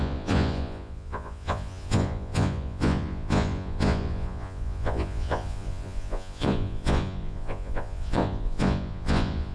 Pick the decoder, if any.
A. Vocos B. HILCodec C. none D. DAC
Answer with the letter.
A